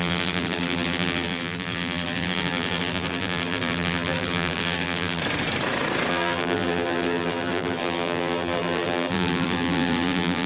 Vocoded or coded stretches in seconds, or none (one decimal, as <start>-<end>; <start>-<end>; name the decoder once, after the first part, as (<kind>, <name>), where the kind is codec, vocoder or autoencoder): 0.0-5.2 (vocoder, BigVGAN v2); 6.1-10.5